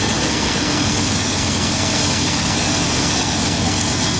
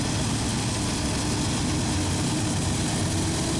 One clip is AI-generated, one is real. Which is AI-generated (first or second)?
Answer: first